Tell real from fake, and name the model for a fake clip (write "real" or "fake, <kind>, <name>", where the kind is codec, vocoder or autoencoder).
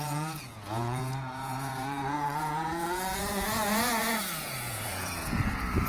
fake, vocoder, Vocos